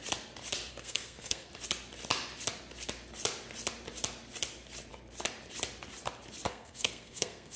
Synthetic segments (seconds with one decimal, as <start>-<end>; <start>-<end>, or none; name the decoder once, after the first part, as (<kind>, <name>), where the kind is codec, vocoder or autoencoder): 0.7-1.5 (codec, SNAC); 6.5-7.6